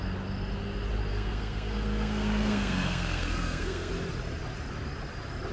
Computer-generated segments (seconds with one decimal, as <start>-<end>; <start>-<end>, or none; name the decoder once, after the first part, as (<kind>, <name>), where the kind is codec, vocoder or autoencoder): 1.1-3.9 (codec, SNAC)